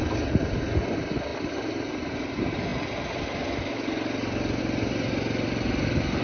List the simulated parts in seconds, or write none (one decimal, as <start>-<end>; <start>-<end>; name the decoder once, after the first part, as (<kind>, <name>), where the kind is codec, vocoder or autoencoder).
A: none